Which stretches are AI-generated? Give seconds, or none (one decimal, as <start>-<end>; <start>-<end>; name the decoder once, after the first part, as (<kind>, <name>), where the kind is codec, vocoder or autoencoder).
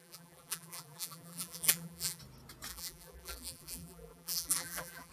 0.0-2.2 (vocoder, BigVGAN v2); 2.7-5.1